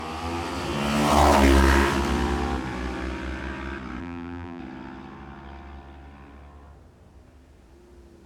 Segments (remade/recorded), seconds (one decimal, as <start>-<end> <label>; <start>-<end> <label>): 0.0-4.0 recorded; 4.0-4.6 remade; 4.6-8.3 recorded

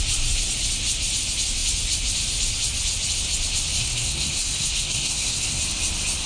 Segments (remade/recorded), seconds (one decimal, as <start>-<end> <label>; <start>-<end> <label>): 0.0-3.8 recorded; 3.8-5.6 remade; 5.6-6.3 recorded

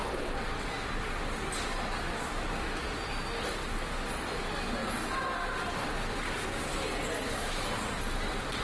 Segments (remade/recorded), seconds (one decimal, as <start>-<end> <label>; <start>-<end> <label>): 0.0-0.7 remade; 0.7-8.6 recorded

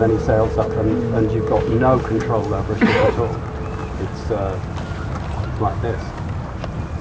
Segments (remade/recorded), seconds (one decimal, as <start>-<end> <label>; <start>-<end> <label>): 0.0-7.0 recorded

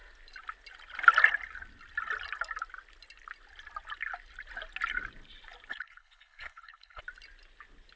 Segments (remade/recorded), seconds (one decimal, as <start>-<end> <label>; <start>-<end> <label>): 0.0-5.7 recorded; 5.7-7.0 remade; 7.0-8.0 recorded

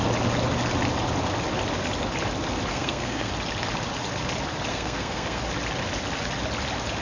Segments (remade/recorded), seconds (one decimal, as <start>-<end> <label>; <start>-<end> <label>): 0.0-2.7 recorded; 2.7-3.3 remade; 3.3-4.7 recorded; 4.7-5.4 remade; 5.4-7.0 recorded

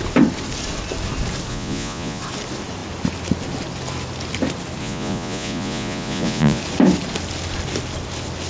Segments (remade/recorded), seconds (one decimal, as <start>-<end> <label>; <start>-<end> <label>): 0.0-1.5 recorded; 1.5-2.2 remade; 2.2-4.8 recorded; 4.8-6.6 remade; 6.6-8.5 recorded